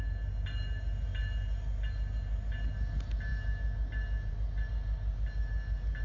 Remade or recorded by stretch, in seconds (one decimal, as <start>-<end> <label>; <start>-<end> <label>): 0.0-6.0 recorded

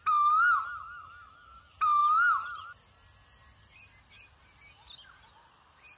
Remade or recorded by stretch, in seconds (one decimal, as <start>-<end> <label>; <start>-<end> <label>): 0.0-6.0 recorded

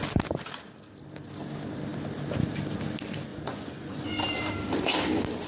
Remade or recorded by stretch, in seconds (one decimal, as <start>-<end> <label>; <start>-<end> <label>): 0.0-3.3 recorded; 3.3-4.1 remade; 4.1-5.5 recorded

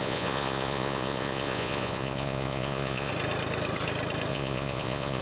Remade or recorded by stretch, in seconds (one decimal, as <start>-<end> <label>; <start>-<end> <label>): 0.0-3.1 remade; 3.1-4.3 recorded; 4.3-5.2 remade

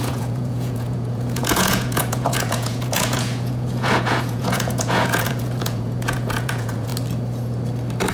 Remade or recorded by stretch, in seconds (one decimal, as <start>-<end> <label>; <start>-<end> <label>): 0.0-6.9 remade; 6.9-8.1 recorded

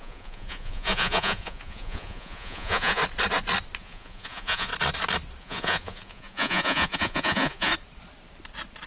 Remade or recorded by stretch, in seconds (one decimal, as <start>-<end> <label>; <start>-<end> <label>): 0.0-3.0 remade; 3.0-3.8 recorded; 3.8-4.7 remade; 4.7-5.4 recorded; 5.4-7.7 remade; 7.7-8.9 recorded

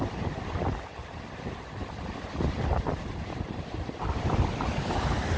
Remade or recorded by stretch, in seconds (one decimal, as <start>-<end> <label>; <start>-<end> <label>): 0.0-5.4 recorded